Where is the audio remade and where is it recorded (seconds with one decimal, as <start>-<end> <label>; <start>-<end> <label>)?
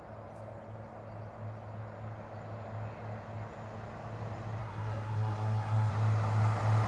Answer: 0.0-4.6 recorded; 4.6-5.9 remade; 5.9-6.9 recorded